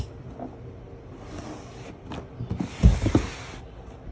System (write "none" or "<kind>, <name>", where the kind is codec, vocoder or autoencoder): none